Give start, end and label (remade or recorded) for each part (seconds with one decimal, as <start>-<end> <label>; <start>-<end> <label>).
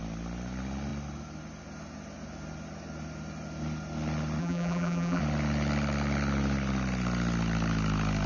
0.0-4.4 recorded; 4.4-5.2 remade; 5.2-8.3 recorded